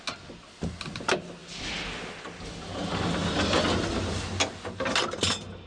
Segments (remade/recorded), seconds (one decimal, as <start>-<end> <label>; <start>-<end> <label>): 0.0-5.7 recorded